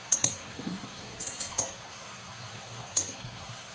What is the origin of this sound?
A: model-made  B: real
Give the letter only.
A